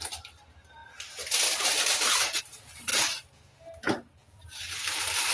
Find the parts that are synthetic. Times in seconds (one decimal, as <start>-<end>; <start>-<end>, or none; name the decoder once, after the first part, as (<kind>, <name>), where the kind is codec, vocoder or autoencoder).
4.2-5.3 (vocoder, BigVGAN v2)